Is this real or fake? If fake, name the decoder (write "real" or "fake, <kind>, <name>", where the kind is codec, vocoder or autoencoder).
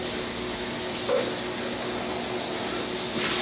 real